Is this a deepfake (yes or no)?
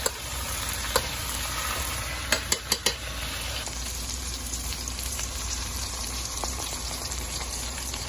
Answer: yes